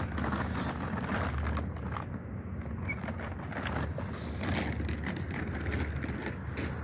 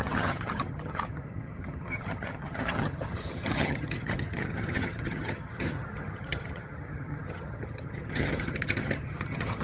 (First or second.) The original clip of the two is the first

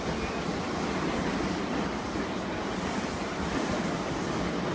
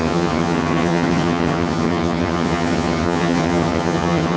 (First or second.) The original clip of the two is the first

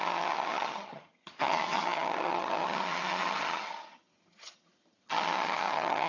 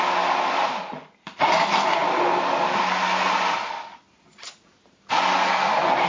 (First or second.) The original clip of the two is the second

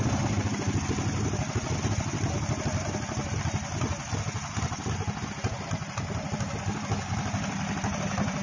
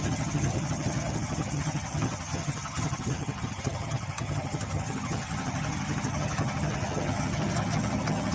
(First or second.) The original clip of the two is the first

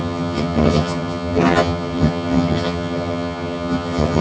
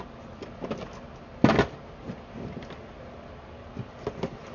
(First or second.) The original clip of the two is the second